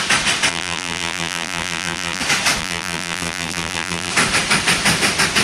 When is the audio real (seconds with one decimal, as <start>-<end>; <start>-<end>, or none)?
0.0-0.5; 2.2-2.6; 4.1-5.4